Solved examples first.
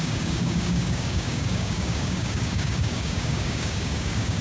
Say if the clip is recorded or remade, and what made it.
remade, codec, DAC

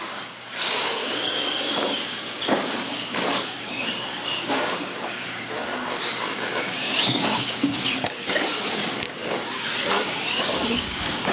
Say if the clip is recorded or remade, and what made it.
remade, codec, DAC